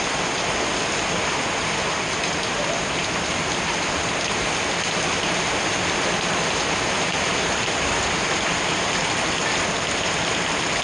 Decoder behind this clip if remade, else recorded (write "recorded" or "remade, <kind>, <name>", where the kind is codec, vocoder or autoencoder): recorded